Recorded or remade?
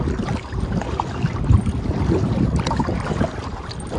recorded